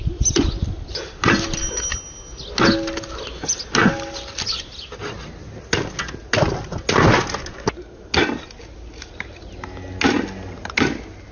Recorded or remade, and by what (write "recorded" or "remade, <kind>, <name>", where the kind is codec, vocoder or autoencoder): recorded